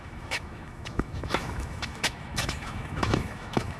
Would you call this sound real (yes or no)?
no